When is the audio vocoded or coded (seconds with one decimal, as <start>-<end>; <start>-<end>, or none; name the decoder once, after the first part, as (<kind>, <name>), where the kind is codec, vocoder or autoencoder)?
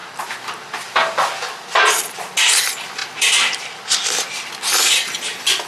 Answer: none